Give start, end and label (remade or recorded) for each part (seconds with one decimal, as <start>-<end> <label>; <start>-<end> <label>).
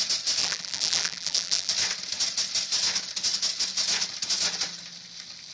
0.0-0.4 recorded; 0.4-1.7 remade; 1.7-5.5 recorded